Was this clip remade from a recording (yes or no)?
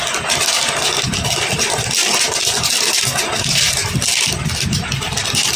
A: no